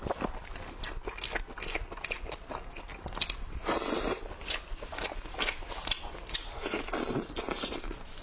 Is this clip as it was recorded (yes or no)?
yes